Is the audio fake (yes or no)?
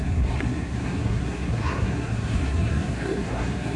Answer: yes